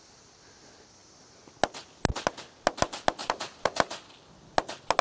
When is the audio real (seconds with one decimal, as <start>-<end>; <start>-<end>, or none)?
0.0-3.2; 3.8-5.0